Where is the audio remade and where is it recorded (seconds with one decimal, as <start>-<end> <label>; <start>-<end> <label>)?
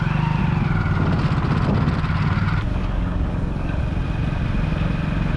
0.0-2.7 recorded; 2.7-3.8 remade; 3.8-5.4 recorded